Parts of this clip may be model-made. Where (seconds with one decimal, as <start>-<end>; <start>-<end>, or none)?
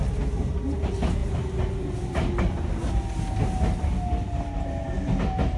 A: none